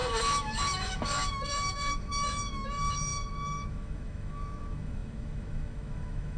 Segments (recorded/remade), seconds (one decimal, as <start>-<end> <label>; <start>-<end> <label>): 0.0-6.4 remade